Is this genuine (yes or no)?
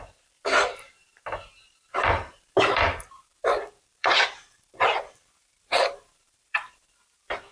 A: no